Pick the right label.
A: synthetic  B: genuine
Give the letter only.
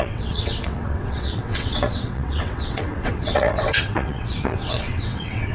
A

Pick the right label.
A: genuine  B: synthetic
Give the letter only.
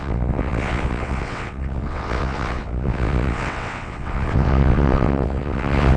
B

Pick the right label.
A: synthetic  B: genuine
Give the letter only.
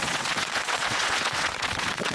A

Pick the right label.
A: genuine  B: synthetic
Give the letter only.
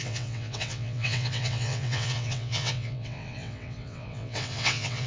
B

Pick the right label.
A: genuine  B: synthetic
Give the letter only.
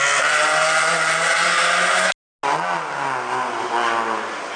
A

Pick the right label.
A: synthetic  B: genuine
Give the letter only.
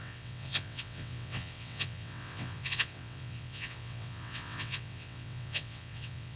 A